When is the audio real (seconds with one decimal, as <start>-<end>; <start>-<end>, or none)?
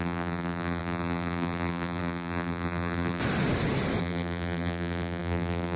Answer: 3.2-4.0